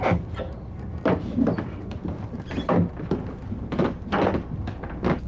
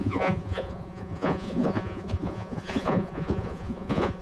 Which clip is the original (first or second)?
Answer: first